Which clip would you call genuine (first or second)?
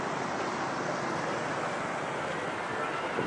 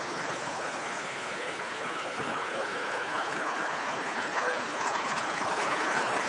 first